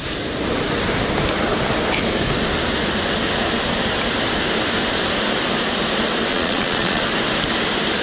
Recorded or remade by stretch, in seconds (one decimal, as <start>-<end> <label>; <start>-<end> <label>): 0.0-6.3 recorded; 6.3-7.0 remade; 7.0-8.0 recorded